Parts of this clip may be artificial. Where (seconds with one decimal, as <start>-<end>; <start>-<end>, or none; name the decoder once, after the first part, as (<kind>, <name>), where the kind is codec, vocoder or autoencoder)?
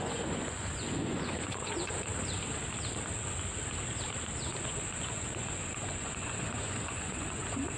0.0-2.1 (vocoder, Vocos); 4.6-7.8